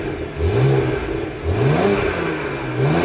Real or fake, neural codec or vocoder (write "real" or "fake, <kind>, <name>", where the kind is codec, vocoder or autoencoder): real